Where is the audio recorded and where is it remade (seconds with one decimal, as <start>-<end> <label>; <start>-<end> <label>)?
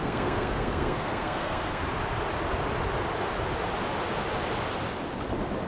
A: 0.0-1.8 remade; 1.8-5.7 recorded